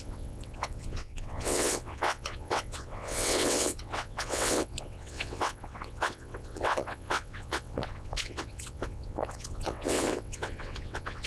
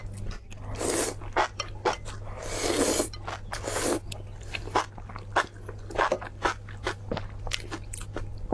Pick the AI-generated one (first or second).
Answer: first